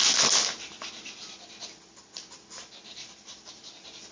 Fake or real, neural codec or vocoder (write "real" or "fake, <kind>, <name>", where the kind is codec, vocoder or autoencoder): real